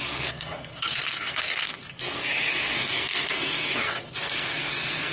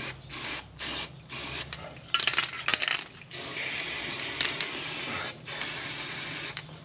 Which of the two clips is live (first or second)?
second